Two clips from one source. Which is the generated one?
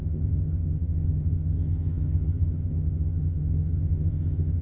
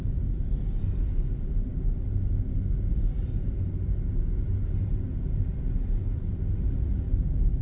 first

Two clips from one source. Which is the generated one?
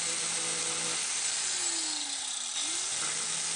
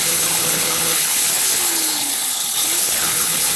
second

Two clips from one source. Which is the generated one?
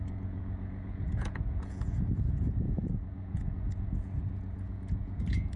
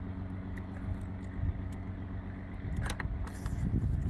first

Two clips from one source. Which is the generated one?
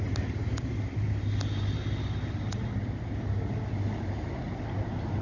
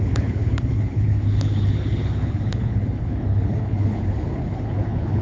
second